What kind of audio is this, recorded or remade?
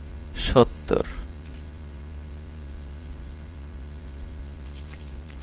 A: remade